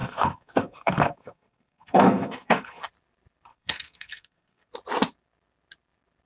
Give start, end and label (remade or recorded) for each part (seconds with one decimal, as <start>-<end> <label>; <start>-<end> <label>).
0.0-2.9 remade; 2.9-3.5 recorded; 3.5-4.7 remade; 4.7-6.3 recorded